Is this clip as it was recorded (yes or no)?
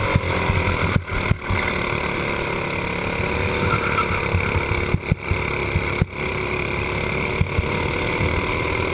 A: yes